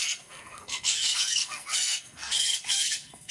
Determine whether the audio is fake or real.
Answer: fake